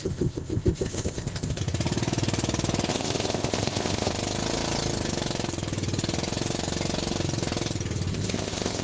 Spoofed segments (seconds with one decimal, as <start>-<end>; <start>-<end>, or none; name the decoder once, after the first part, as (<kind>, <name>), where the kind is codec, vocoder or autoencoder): 0.0-1.6 (codec, ZipCodec); 2.9-4.1; 8.1-8.8